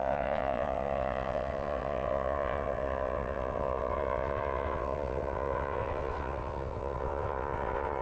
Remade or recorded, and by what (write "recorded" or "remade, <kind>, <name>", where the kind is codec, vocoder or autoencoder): remade, vocoder, WaveNeXt